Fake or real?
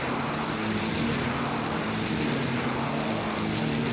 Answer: real